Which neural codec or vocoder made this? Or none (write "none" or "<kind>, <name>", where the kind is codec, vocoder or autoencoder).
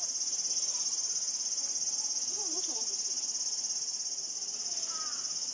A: none